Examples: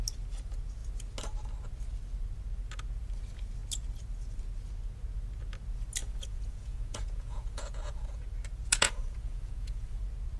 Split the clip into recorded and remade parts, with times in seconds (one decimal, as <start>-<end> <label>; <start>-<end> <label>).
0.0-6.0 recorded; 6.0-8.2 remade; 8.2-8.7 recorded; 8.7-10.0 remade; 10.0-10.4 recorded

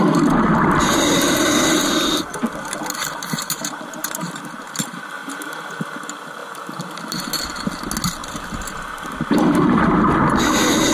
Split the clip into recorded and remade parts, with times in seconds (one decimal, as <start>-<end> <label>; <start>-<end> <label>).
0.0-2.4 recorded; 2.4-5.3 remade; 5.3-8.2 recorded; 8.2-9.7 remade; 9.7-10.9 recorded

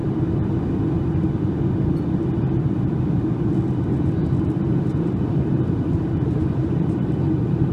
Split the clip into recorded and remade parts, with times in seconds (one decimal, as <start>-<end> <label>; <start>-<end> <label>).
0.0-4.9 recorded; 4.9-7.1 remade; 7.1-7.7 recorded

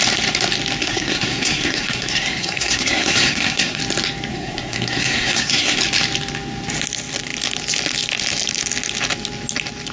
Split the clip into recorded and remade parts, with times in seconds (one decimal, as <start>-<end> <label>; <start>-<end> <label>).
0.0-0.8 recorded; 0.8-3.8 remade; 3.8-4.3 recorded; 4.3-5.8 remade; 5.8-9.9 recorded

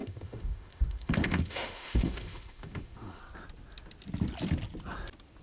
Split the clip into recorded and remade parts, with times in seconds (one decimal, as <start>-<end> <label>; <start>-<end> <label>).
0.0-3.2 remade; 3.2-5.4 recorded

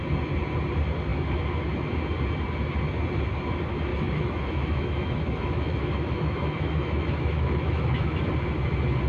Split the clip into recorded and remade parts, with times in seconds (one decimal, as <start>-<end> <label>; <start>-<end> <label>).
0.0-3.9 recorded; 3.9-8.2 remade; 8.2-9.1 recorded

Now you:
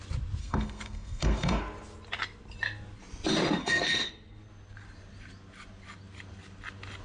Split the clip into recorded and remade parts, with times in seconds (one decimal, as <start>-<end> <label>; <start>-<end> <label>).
0.0-0.4 recorded; 0.4-1.6 remade; 1.6-3.6 recorded; 3.6-4.1 remade; 4.1-7.0 recorded